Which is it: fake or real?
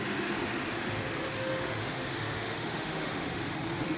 fake